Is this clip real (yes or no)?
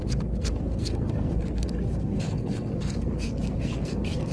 no